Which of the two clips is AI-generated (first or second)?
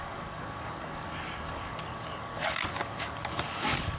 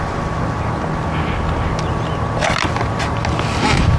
first